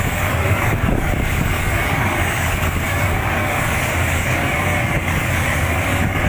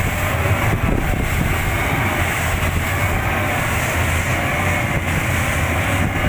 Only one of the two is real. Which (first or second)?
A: second